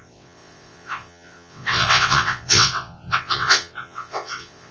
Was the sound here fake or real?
fake